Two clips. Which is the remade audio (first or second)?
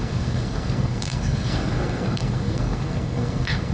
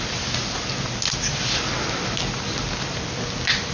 first